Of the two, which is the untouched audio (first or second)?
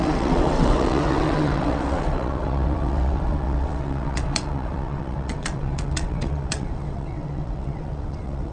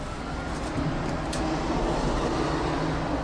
second